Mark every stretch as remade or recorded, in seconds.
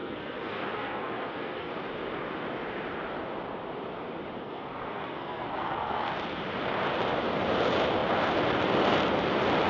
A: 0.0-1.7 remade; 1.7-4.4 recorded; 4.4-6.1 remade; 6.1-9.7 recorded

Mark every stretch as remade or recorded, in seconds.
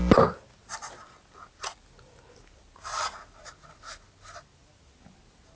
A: 0.0-5.6 recorded